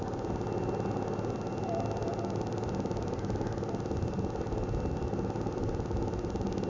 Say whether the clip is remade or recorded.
recorded